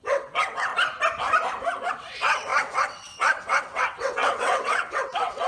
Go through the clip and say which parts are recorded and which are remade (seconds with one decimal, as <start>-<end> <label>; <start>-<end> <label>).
0.0-0.7 remade; 0.7-1.9 recorded; 1.9-5.5 remade